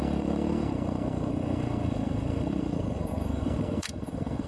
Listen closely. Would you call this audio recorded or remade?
remade